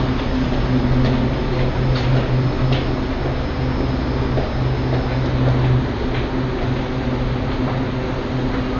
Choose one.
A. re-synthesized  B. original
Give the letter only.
B